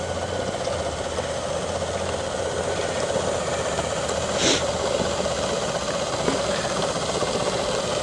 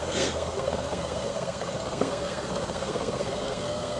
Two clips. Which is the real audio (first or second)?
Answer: first